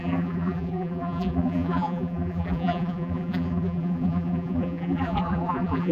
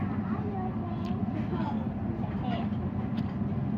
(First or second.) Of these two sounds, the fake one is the first